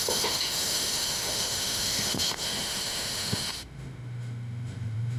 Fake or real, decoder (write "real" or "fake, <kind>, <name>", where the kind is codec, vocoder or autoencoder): fake, autoencoder, DAC-VAE